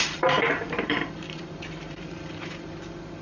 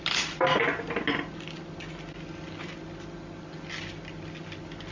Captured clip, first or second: second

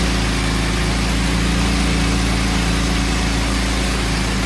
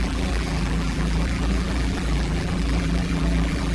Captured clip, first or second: first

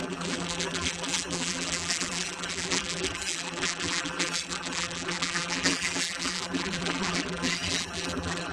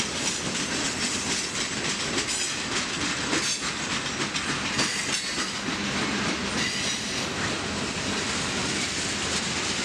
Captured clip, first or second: second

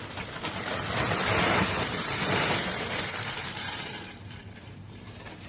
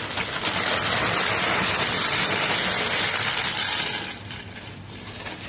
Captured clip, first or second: second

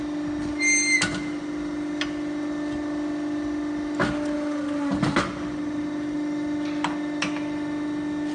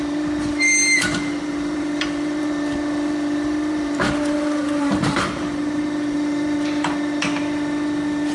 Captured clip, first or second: first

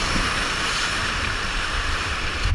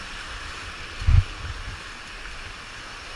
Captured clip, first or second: second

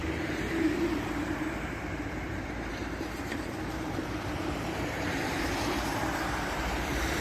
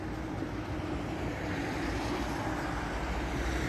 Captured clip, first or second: second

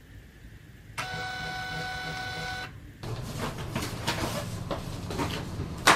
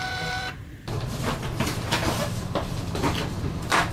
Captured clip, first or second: first